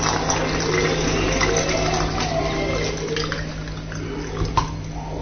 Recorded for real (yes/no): yes